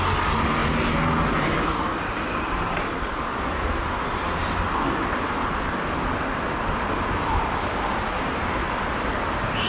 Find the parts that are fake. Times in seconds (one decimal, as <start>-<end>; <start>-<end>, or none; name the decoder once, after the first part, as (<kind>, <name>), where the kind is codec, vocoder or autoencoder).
none